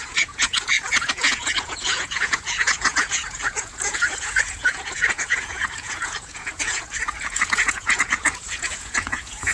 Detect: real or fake fake